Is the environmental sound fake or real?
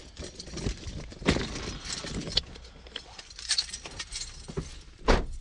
real